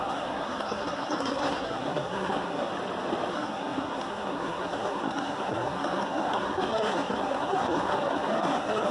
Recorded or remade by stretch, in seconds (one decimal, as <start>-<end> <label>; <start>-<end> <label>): 0.0-2.7 remade; 2.7-3.3 recorded; 3.3-8.9 remade